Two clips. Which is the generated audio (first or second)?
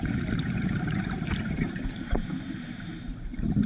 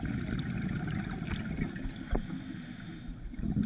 first